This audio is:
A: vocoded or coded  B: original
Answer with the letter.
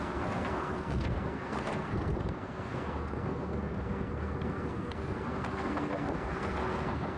A